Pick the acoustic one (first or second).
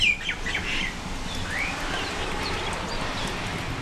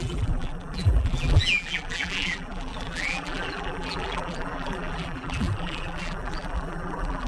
first